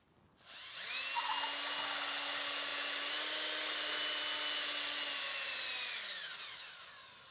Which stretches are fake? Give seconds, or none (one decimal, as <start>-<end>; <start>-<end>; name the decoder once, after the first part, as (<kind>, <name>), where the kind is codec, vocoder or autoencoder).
none